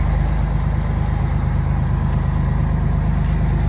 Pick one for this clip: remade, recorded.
recorded